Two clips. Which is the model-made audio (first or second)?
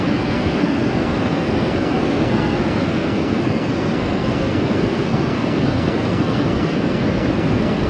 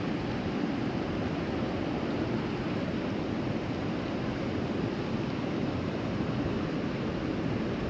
first